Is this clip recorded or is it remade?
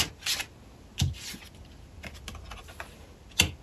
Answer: recorded